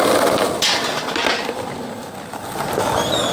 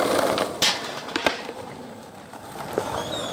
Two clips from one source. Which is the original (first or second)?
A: first